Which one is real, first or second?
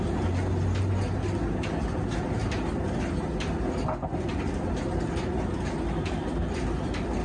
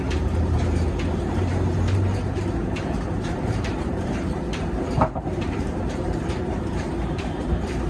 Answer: first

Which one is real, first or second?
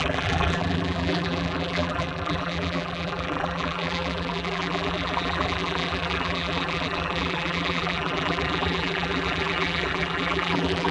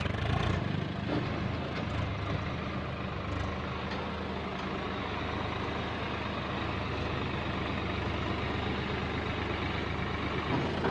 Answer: second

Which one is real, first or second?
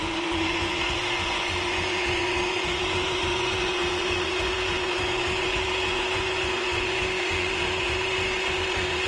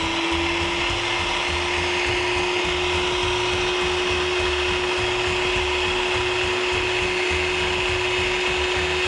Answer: second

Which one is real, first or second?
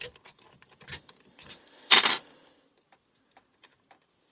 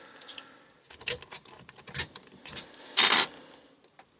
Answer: second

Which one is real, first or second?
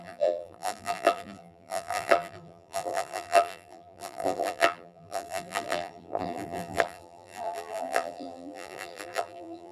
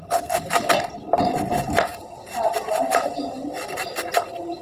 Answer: second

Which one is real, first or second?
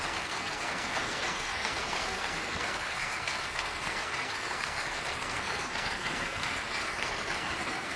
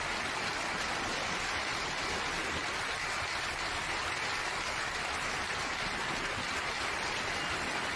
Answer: second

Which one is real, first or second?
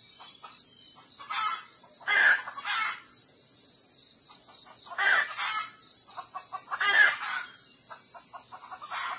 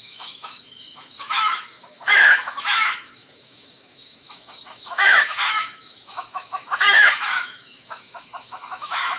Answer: first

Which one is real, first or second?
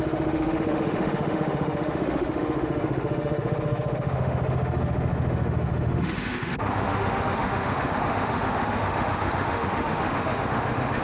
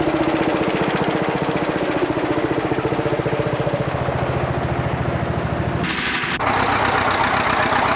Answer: second